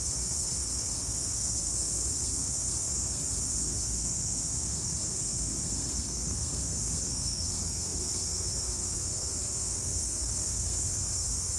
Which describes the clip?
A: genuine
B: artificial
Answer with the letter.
B